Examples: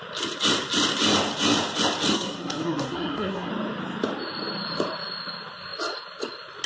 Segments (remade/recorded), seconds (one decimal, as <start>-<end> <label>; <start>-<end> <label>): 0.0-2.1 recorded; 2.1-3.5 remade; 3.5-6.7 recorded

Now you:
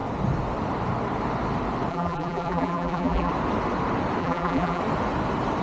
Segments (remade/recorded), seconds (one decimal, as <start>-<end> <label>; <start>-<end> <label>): 0.0-1.9 recorded; 1.9-3.3 remade; 3.3-4.2 recorded; 4.2-4.8 remade; 4.8-5.6 recorded

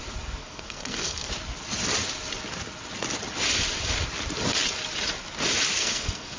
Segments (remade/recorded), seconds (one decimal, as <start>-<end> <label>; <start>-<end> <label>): 0.0-0.4 recorded; 0.4-1.3 remade; 1.3-5.8 recorded; 5.8-6.4 remade